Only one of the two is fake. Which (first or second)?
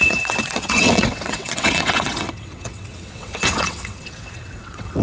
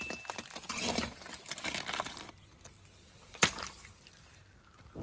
first